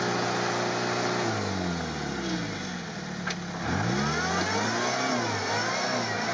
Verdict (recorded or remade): recorded